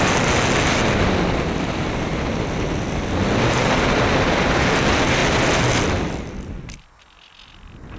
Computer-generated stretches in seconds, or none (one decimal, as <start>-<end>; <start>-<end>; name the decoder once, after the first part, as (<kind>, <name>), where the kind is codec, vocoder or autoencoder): none